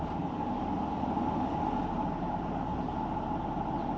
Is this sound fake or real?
real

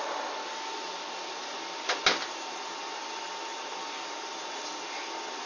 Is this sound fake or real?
real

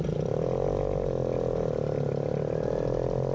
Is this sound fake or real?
real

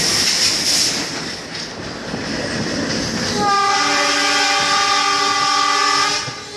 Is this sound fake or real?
real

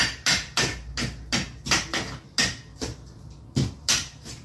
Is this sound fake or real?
real